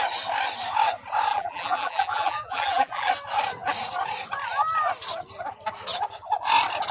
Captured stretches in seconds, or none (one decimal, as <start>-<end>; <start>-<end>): 0.0-1.3; 3.1-6.9